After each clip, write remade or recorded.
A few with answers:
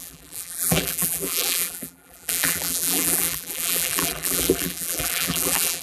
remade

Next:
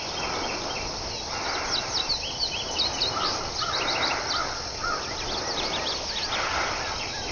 remade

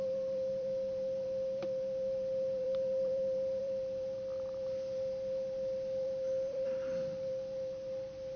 remade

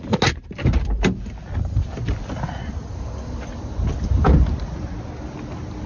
recorded